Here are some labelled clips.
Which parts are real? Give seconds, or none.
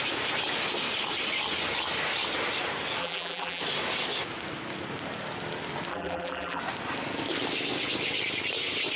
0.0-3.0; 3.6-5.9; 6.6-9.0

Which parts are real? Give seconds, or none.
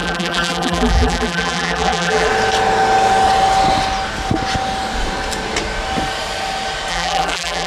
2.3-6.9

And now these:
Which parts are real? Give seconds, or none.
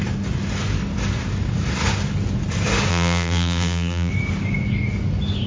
0.0-2.9; 4.1-5.5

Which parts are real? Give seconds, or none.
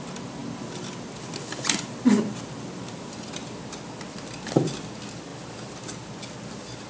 0.0-0.4; 2.8-6.9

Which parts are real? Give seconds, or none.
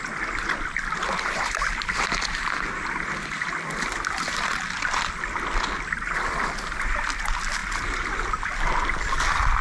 0.0-7.6; 8.3-9.6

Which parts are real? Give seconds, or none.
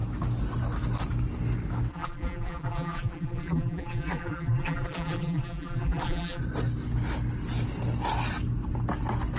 0.0-1.9; 6.4-9.4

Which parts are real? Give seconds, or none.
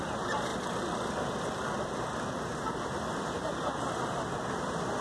0.0-5.0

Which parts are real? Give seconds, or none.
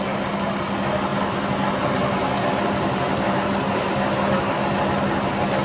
0.0-5.6